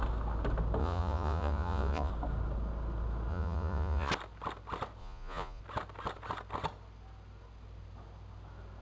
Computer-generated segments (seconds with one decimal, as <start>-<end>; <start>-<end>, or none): 0.8-2.1; 3.3-4.1; 5.0-5.6